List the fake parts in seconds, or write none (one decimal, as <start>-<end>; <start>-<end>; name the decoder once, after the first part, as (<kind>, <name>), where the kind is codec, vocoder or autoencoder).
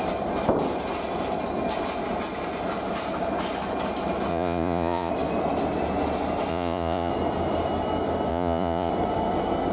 4.3-5.1 (vocoder, Vocos); 6.5-7.1; 8.3-8.9